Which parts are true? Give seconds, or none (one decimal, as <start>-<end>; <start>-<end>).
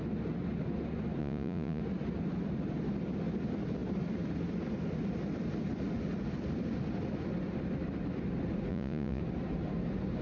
0.0-1.2; 1.8-8.7; 9.2-10.2